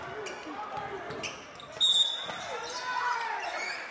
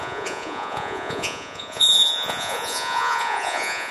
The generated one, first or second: second